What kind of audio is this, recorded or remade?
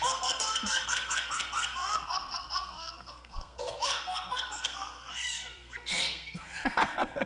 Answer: remade